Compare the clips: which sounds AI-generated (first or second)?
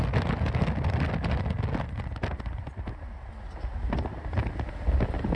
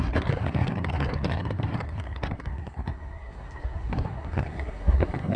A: second